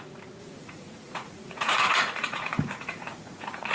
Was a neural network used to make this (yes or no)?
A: yes